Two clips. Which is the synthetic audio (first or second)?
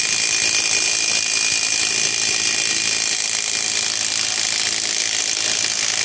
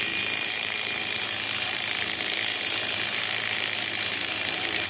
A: second